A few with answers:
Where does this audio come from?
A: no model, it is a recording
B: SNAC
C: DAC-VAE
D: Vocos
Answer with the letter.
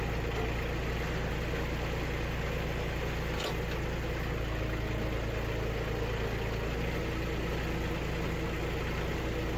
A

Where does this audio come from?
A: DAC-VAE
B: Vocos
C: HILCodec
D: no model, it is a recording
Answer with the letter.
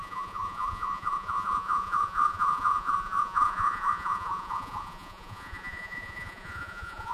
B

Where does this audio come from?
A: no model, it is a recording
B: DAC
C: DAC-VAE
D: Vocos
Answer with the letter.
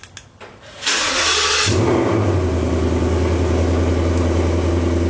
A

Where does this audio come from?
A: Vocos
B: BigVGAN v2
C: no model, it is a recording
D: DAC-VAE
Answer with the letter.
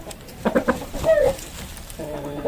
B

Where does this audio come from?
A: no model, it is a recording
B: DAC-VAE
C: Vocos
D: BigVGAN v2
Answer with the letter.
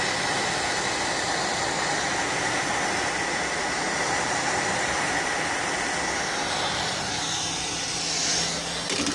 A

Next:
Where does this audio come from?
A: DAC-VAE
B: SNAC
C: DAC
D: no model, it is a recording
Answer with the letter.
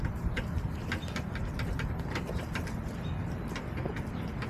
D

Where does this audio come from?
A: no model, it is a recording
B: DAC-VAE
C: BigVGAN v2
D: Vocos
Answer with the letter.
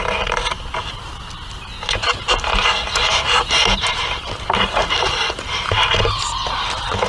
A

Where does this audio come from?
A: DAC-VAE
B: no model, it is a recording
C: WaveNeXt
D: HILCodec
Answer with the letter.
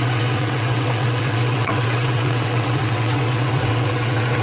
C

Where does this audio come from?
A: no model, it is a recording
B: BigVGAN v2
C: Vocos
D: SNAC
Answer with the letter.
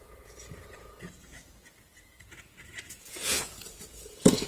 C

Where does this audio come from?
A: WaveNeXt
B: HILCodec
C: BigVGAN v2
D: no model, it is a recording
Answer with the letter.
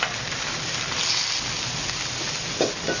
D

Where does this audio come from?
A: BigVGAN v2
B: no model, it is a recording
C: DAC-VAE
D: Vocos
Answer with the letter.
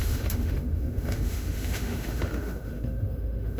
C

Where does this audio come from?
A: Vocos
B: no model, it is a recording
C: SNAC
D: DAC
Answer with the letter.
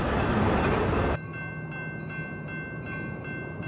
B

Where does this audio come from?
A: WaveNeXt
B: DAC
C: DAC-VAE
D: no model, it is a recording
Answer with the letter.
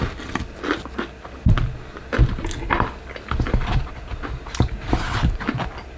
D